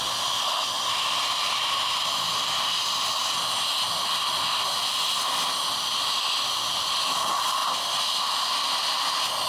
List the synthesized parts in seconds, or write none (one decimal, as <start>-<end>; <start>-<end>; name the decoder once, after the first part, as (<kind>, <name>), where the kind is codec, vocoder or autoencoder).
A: none